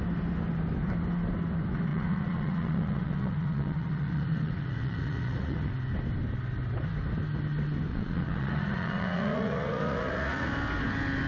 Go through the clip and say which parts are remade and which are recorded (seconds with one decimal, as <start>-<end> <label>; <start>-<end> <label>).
0.0-1.9 recorded; 1.9-5.7 remade; 5.7-7.9 recorded; 7.9-10.5 remade; 10.5-11.3 recorded